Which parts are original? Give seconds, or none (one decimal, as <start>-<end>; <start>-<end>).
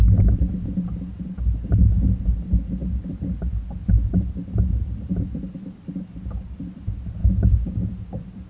0.0-7.2; 7.9-8.5